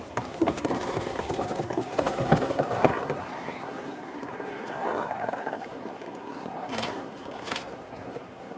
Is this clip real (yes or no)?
no